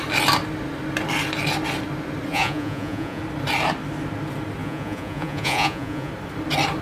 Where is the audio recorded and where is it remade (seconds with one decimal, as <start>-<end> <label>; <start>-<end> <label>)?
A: 0.0-2.3 recorded; 2.3-3.2 remade; 3.2-4.6 recorded; 4.6-6.1 remade; 6.1-6.8 recorded

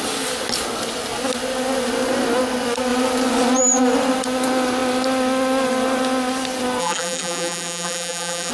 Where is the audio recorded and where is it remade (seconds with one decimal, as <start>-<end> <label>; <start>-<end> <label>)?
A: 0.0-6.8 recorded; 6.8-8.5 remade

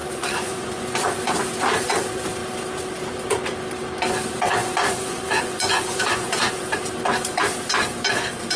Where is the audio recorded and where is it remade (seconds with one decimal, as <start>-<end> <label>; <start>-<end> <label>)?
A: 0.0-1.1 remade; 1.1-4.6 recorded; 4.6-6.6 remade; 6.6-8.6 recorded